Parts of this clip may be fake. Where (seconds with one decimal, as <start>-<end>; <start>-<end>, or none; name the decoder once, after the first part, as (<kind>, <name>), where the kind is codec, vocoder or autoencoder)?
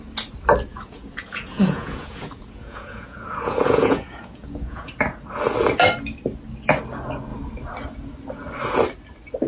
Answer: 0.7-4.9 (vocoder, Vocos)